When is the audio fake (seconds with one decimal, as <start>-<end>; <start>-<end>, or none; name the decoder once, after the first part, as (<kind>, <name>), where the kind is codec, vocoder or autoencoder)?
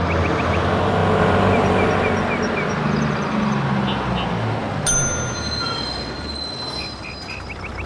none